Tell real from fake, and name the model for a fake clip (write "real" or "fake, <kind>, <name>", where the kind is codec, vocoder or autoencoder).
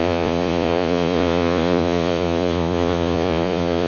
fake, vocoder, Vocos